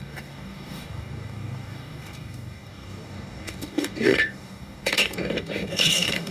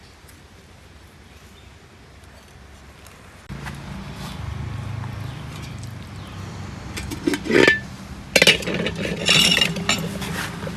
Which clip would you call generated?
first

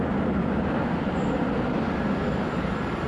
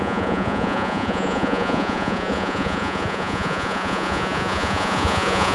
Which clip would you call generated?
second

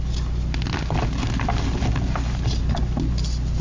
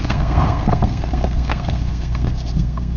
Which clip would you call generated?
second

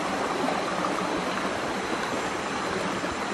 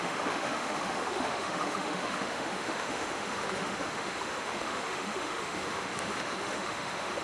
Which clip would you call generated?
second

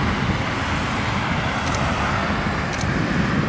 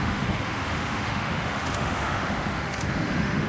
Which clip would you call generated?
second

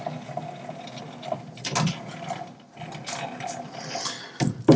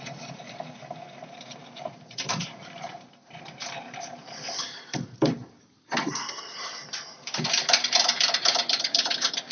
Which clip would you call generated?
second